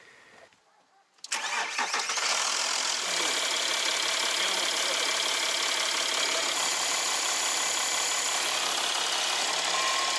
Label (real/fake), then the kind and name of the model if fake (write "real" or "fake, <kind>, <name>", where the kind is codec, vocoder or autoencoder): real